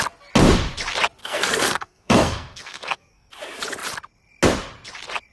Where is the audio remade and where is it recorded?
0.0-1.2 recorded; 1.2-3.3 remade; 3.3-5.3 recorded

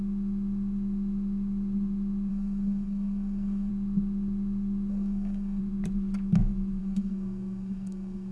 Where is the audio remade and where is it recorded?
0.0-2.3 recorded; 2.3-3.7 remade; 3.7-4.9 recorded; 4.9-5.6 remade; 5.6-6.8 recorded; 6.8-8.3 remade

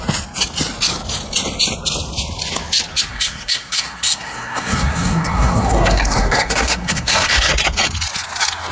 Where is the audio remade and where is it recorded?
0.0-3.1 recorded; 3.1-7.5 remade; 7.5-8.7 recorded

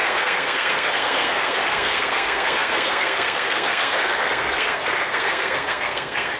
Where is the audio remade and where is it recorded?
0.0-6.4 remade

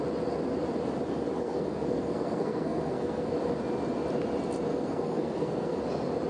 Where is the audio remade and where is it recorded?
0.0-1.4 recorded; 1.4-3.3 remade; 3.3-4.7 recorded; 4.7-5.8 remade; 5.8-6.3 recorded